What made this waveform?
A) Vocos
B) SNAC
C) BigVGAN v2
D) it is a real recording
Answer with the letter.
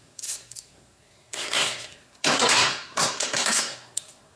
B